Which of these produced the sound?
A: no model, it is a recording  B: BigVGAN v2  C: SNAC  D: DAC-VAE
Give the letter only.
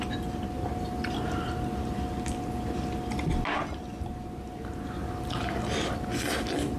A